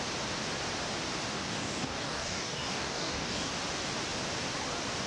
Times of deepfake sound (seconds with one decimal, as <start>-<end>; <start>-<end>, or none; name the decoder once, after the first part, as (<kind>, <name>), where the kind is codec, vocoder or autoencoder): 1.3-3.5 (codec, DAC)